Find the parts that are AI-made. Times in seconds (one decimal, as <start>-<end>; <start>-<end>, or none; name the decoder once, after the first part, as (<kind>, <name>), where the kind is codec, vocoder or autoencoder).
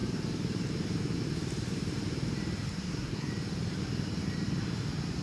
2.7-3.3 (codec, SNAC)